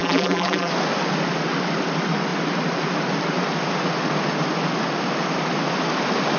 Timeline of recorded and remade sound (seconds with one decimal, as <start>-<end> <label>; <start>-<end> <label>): 0.0-0.7 remade; 0.7-6.4 recorded